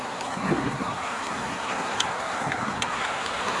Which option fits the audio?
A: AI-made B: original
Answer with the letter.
A